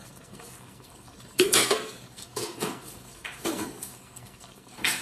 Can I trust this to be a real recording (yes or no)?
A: no